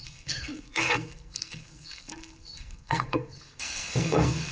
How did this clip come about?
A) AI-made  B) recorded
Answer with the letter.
A